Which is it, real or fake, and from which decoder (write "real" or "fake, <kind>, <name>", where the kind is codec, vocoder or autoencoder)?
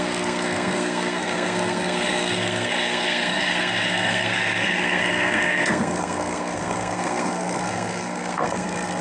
fake, codec, SNAC